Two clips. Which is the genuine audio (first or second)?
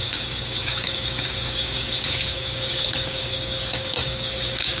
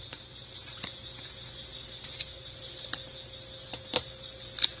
second